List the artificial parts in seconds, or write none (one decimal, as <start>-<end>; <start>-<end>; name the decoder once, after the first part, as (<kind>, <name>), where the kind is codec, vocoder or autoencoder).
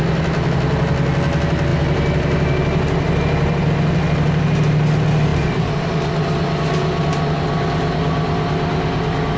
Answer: 1.7-3.7 (vocoder, BigVGAN v2); 5.3-5.9